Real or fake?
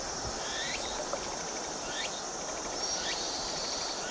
real